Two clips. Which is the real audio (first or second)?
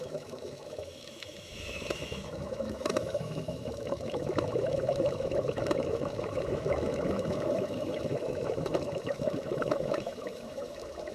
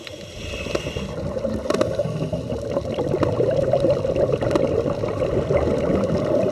second